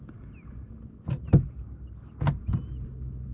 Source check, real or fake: real